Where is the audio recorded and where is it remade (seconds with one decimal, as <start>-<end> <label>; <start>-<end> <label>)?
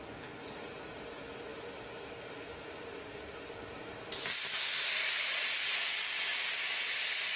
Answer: 0.0-7.4 recorded